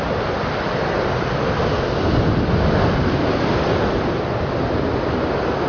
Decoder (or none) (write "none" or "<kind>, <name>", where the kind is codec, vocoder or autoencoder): none